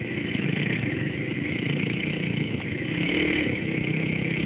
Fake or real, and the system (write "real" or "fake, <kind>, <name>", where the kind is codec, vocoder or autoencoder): fake, autoencoder, DAC-VAE